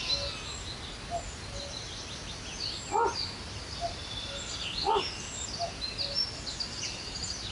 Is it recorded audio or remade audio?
recorded